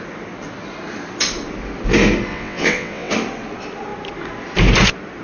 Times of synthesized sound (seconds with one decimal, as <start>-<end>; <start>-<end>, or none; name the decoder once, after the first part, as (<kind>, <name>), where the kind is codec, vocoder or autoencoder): 2.3-3.1 (vocoder, WaveNeXt)